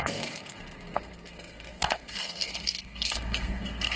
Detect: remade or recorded remade